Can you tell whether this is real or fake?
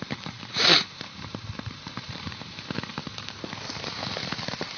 fake